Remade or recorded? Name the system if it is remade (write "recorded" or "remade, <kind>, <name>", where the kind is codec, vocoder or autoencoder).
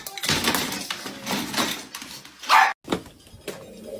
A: recorded